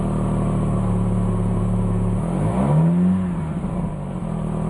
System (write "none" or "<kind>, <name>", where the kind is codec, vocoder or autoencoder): none